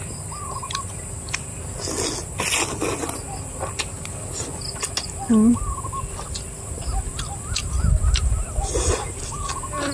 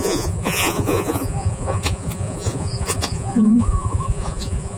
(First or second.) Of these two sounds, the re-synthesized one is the second